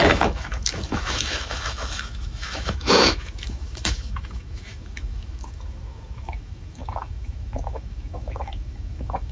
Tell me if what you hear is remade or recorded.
remade